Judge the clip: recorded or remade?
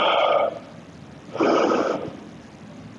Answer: recorded